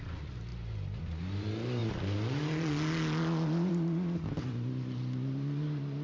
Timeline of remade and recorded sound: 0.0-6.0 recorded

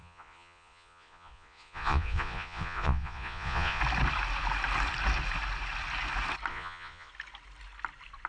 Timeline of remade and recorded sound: 0.0-3.8 remade; 3.8-6.5 recorded; 6.5-7.1 remade; 7.1-8.3 recorded

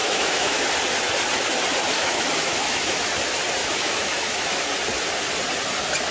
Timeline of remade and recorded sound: 0.0-0.6 remade; 0.6-2.0 recorded; 2.0-3.1 remade; 3.1-3.6 recorded; 3.6-4.6 remade; 4.6-6.1 recorded

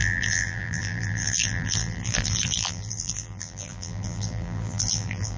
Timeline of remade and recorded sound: 0.0-5.4 remade

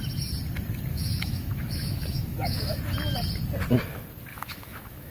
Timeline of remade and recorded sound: 0.0-0.9 recorded; 0.9-2.8 remade; 2.8-4.3 recorded; 4.3-5.1 remade

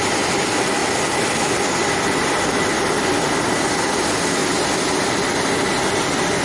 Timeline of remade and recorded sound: 0.0-6.4 recorded